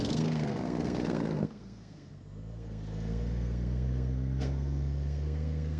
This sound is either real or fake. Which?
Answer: fake